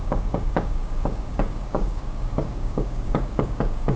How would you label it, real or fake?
fake